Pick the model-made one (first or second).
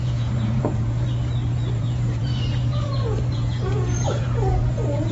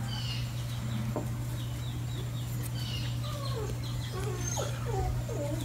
first